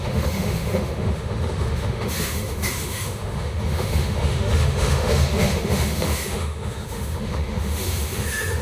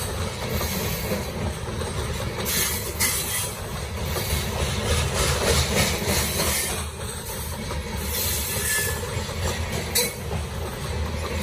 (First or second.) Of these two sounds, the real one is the second